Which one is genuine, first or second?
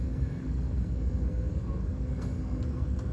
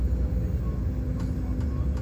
second